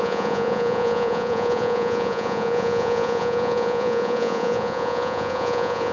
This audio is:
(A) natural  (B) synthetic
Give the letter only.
B